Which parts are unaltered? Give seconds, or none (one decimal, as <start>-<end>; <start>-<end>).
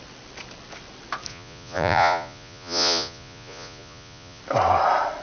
0.0-1.3; 4.4-5.2